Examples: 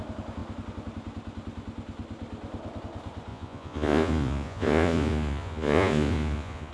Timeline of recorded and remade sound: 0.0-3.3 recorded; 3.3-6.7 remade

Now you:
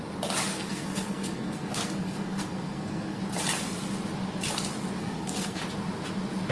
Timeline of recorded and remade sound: 0.0-0.5 recorded; 0.5-3.2 remade; 3.2-5.0 recorded; 5.0-5.6 remade; 5.6-6.5 recorded